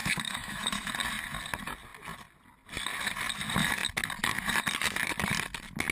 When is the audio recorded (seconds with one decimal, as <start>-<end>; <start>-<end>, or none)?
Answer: 0.9-5.9